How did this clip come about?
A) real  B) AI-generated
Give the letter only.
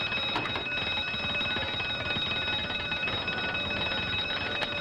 A